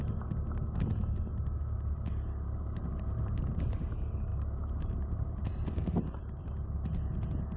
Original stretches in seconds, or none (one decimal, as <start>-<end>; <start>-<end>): 0.0-2.8; 3.4-4.3; 6.4-7.6